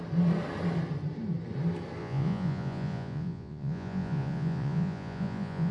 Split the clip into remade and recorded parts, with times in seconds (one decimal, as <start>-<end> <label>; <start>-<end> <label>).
0.0-2.0 recorded; 2.0-5.7 remade